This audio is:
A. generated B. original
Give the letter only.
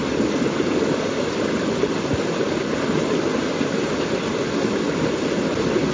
B